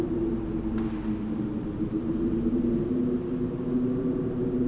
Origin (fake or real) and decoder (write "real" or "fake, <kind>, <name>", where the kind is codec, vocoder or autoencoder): real